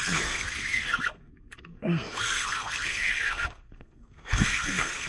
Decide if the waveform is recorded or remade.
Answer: remade